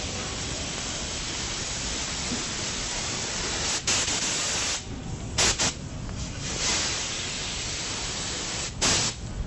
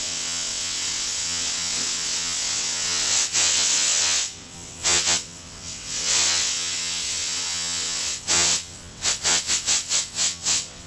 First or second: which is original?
first